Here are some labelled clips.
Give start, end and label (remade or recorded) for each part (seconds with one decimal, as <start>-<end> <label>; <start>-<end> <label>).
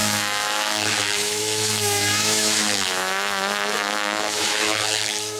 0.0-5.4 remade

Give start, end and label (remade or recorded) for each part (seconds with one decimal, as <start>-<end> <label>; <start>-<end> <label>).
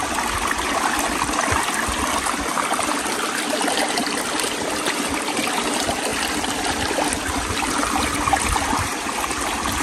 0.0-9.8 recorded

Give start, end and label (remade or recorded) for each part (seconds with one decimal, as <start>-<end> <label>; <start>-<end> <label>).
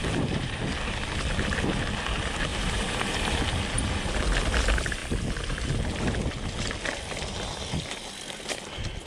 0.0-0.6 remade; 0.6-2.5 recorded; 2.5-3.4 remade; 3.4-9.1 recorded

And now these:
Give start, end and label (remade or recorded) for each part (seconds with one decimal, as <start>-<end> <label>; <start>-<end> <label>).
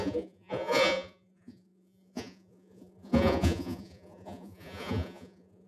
0.0-5.7 remade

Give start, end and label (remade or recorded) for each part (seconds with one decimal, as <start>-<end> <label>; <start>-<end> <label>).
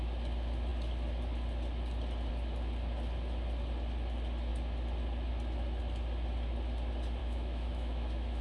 0.0-7.2 recorded; 7.2-8.4 remade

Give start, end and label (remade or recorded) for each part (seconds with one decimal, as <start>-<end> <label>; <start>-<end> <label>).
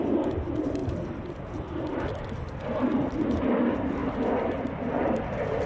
0.0-0.8 remade; 0.8-1.9 recorded; 1.9-4.0 remade; 4.0-5.0 recorded; 5.0-5.7 remade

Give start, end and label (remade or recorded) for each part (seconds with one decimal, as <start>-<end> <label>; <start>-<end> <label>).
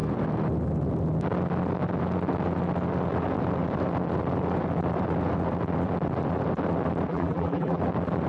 0.0-7.1 recorded; 7.1-7.8 remade; 7.8-8.3 recorded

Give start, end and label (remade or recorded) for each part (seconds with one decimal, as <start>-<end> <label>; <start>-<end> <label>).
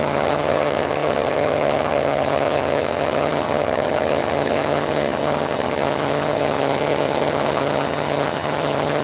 0.0-9.0 remade